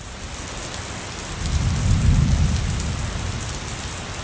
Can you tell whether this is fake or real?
real